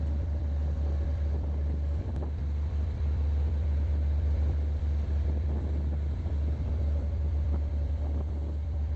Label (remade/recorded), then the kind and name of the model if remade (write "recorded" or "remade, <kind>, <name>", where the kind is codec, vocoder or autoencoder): remade, vocoder, BigVGAN v2